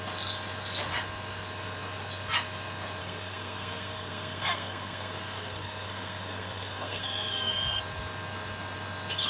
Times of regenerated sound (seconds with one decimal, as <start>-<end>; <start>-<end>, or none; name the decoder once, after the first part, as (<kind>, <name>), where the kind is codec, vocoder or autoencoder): 3.0-7.8 (codec, SNAC)